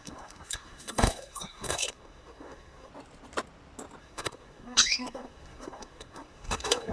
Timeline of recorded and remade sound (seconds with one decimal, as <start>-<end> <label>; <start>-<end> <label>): 0.0-2.9 remade; 2.9-4.0 recorded; 4.0-6.9 remade